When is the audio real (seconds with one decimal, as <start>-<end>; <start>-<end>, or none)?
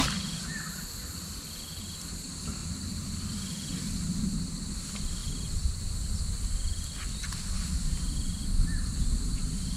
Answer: 0.0-2.6; 4.2-9.8